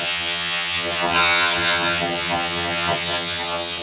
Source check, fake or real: fake